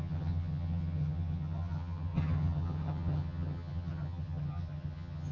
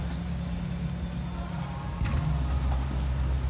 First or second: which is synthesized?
first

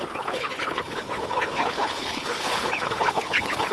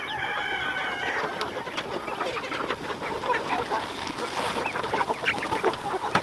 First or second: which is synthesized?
first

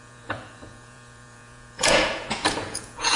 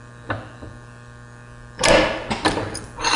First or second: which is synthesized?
first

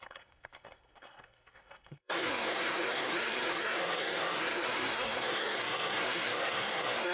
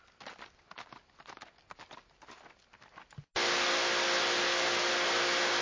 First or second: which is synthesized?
first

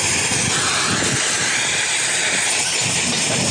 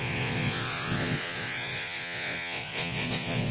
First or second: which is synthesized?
second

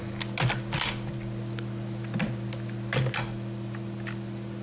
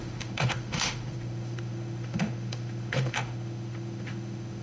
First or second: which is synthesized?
second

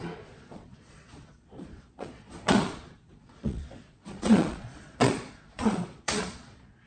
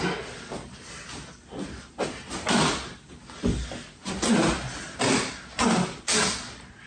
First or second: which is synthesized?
first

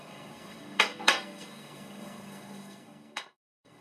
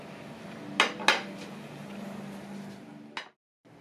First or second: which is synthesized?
first